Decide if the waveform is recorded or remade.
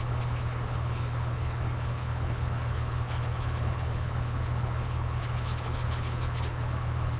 remade